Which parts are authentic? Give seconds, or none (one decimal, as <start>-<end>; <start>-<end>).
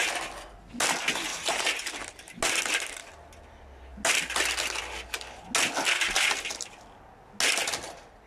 0.0-1.3; 1.9-8.3